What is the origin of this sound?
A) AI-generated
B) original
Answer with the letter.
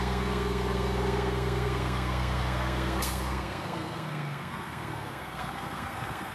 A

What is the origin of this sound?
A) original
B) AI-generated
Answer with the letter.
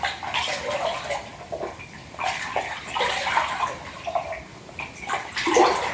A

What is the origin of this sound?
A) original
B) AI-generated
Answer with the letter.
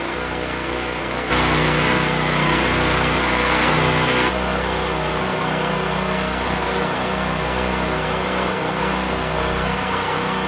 B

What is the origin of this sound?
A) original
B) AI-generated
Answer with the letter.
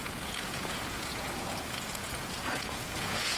B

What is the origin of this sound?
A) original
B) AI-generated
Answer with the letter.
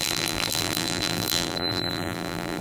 B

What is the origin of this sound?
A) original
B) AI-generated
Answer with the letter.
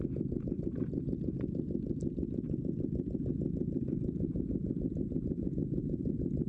B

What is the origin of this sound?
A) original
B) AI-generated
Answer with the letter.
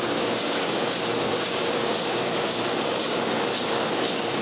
B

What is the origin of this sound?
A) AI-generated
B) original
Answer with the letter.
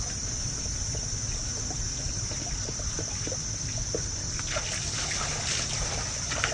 B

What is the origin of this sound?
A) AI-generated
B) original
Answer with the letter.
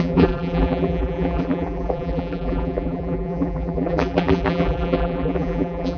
A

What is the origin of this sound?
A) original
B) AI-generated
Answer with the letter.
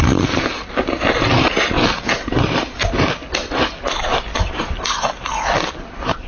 A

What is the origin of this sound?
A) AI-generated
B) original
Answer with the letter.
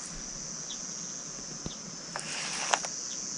B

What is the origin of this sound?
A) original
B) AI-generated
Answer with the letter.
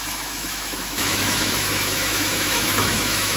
B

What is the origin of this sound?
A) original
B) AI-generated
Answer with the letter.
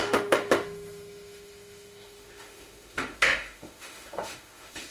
B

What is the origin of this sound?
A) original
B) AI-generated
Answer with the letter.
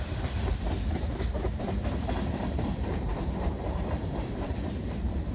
B